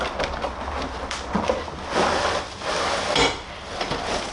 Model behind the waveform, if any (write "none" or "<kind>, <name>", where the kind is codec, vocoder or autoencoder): none